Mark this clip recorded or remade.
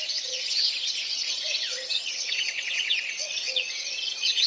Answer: remade